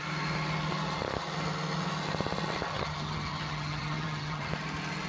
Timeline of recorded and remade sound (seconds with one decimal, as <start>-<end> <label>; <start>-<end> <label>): 0.0-2.7 recorded; 2.7-4.5 remade; 4.5-5.1 recorded